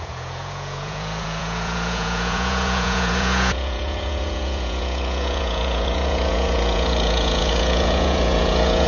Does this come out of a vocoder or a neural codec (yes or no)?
yes